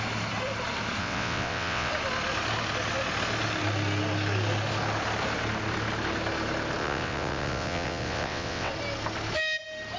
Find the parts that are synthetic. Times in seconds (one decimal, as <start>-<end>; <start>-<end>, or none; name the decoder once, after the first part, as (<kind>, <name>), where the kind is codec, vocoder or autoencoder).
1.0-1.9 (vocoder, WaveNeXt); 6.8-8.7